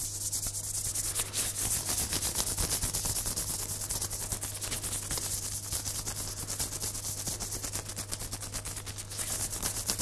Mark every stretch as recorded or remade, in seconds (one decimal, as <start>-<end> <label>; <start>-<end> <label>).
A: 0.0-10.0 recorded